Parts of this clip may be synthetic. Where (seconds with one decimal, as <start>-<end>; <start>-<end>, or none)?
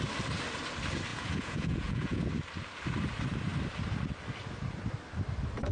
1.1-2.3